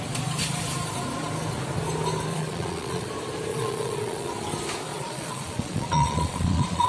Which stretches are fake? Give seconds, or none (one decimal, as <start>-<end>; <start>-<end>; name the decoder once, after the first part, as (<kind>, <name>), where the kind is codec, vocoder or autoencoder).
2.3-3.1 (vocoder, Vocos); 3.5-4.3; 4.9-6.9